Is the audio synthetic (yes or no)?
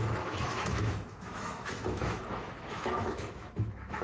yes